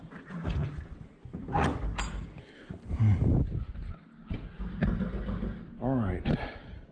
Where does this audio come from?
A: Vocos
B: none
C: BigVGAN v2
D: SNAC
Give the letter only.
B